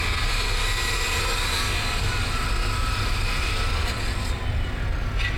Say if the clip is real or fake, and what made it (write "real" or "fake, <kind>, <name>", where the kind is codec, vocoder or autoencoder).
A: real